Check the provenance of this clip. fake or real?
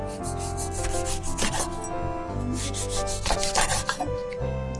real